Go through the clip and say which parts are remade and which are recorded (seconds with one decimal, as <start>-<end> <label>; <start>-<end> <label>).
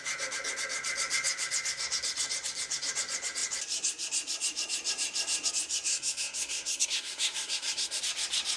0.0-5.9 recorded; 5.9-8.0 remade; 8.0-8.6 recorded